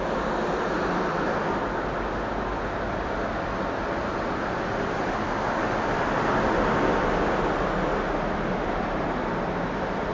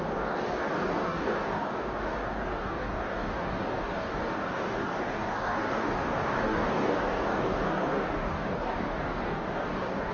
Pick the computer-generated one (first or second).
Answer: second